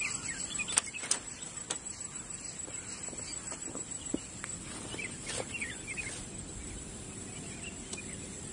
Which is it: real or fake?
fake